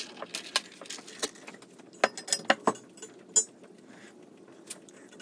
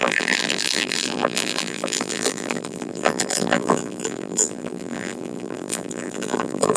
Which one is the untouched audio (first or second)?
first